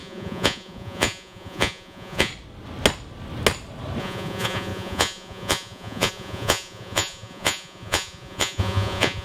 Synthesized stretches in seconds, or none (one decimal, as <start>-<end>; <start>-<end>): 0.0-2.3; 4.0-9.2

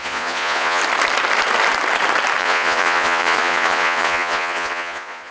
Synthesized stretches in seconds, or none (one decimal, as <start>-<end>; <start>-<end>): 0.0-0.8; 2.4-5.3

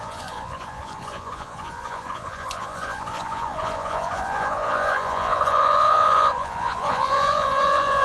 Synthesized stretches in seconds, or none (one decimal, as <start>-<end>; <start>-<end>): 0.0-8.0

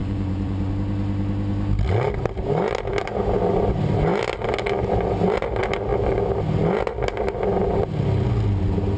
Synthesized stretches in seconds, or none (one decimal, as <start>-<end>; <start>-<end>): 0.0-0.7